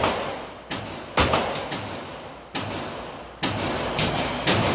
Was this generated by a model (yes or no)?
no